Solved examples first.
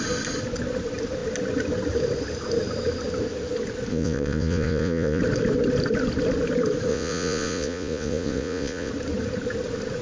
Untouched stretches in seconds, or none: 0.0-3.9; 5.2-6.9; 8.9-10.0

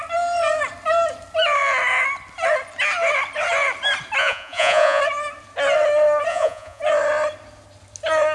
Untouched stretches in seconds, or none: 0.0-4.2; 5.0-6.3; 6.8-8.3